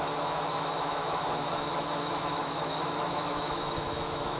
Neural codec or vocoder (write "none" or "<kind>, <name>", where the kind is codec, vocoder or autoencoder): autoencoder, DAC-VAE